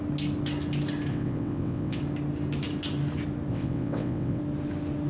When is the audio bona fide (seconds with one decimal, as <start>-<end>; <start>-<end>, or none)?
0.0-1.1; 2.0-3.5; 4.4-5.1